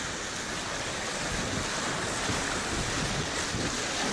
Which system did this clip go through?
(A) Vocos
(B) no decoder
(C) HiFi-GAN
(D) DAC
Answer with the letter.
B